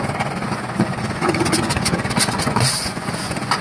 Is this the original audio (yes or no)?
no